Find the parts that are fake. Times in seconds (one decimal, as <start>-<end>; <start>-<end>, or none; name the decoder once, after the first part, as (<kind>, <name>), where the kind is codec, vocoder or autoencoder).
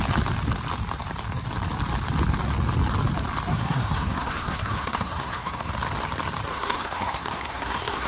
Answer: 3.5-5.7 (codec, SNAC); 6.5-8.1